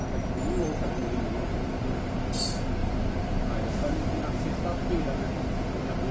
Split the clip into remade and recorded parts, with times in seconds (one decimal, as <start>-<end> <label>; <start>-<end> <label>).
0.0-2.8 recorded; 2.8-4.1 remade; 4.1-6.1 recorded